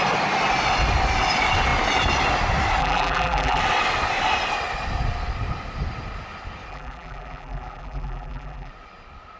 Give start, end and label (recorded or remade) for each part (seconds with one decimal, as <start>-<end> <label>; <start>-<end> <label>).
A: 0.0-2.8 recorded; 2.8-3.6 remade; 3.6-6.7 recorded; 6.7-8.7 remade; 8.7-9.4 recorded